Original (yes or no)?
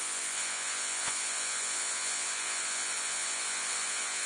no